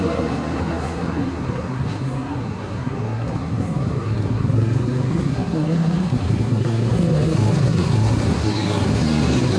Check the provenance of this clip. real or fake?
fake